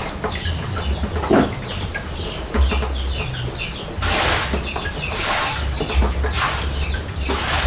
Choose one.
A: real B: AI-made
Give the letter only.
A